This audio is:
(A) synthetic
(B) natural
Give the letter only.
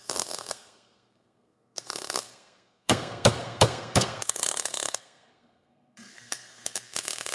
A